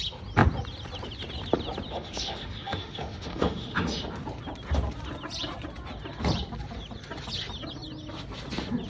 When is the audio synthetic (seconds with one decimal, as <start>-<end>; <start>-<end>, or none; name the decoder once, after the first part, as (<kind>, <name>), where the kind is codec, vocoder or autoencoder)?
1.9-4.0 (autoencoder, DAC-VAE)